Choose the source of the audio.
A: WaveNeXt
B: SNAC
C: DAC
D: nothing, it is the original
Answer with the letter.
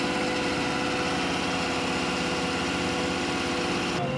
D